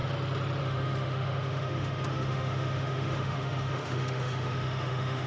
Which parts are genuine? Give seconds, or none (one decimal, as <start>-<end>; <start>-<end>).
0.0-0.6